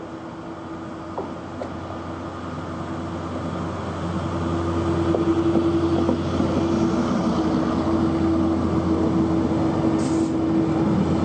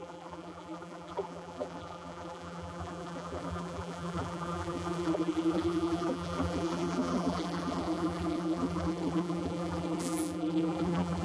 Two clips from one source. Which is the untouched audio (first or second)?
first